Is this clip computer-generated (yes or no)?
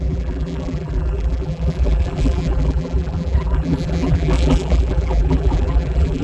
yes